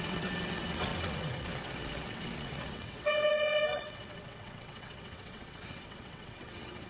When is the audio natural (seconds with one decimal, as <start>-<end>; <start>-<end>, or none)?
none